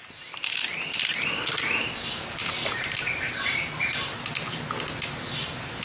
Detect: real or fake real